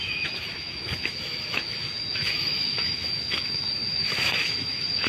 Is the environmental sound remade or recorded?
remade